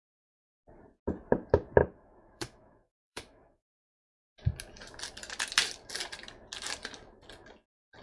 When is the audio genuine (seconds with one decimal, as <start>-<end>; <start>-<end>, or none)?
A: 0.0-1.8; 4.0-8.0